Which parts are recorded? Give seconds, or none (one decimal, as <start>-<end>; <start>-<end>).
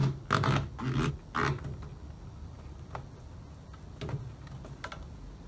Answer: 0.0-5.5